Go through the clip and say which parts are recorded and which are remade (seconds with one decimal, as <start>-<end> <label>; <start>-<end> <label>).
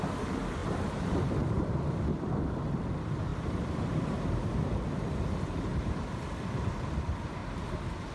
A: 0.0-0.6 recorded; 0.6-1.9 remade; 1.9-3.3 recorded; 3.3-6.7 remade; 6.7-7.4 recorded; 7.4-8.1 remade